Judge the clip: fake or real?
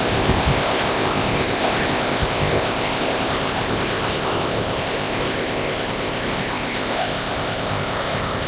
fake